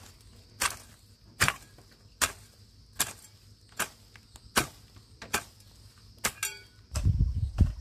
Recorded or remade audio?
recorded